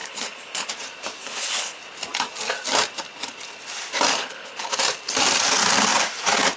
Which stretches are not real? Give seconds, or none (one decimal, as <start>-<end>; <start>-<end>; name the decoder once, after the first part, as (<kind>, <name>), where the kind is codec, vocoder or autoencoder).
0.0-0.7 (codec, HILCodec); 1.2-1.8; 4.1-4.8